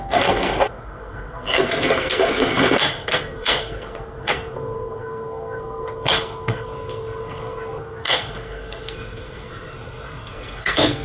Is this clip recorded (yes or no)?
no